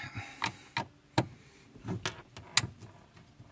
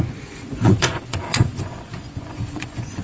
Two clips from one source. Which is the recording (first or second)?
first